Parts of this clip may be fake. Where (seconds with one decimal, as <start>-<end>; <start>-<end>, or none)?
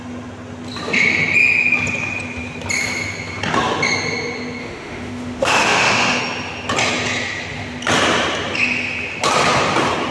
4.6-6.2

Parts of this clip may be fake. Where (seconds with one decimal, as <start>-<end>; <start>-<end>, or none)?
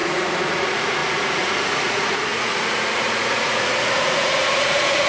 0.0-5.1